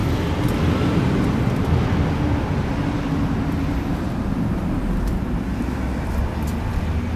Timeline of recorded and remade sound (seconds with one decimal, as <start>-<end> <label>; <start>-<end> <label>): 0.0-4.0 remade; 4.0-7.2 recorded